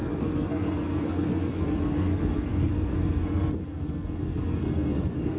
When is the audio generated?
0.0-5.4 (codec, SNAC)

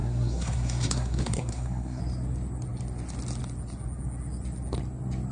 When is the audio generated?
0.0-2.0 (codec, SNAC)